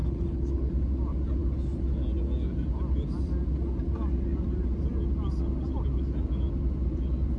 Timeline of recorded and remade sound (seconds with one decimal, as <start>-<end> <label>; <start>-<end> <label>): 0.0-0.7 remade; 0.7-7.4 recorded

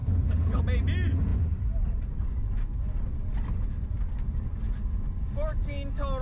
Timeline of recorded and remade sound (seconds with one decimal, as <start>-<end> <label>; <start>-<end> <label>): 0.0-0.6 remade; 0.6-6.2 recorded

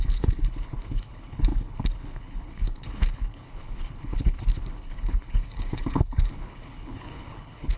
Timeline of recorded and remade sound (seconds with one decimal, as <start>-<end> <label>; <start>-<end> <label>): 0.0-7.8 remade